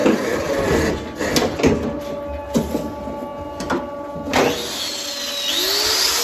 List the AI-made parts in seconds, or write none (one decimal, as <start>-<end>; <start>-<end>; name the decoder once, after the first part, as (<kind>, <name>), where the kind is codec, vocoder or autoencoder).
none